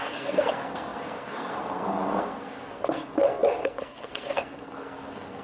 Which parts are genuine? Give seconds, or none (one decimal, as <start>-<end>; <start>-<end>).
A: none